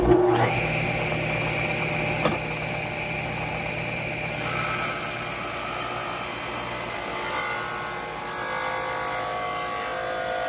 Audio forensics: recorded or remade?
recorded